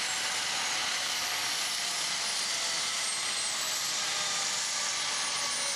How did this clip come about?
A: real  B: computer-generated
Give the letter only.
A